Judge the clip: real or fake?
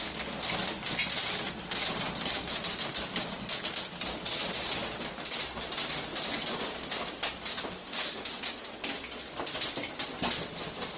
real